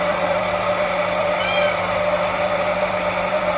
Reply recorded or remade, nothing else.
remade